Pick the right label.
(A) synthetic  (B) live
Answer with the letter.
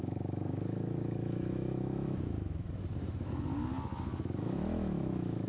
A